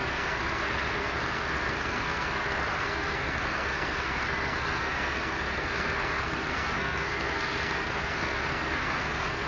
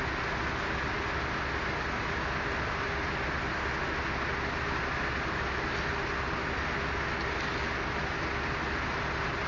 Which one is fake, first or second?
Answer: first